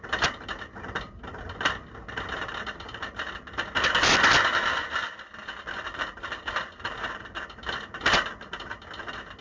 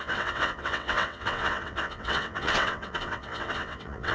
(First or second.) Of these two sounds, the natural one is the first